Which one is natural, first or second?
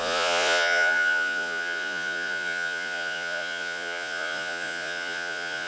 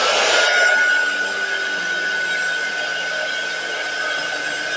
second